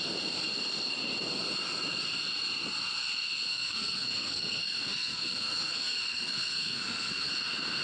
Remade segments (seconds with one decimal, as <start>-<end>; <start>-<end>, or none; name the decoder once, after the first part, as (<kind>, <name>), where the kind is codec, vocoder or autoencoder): 3.5-7.3 (codec, SNAC)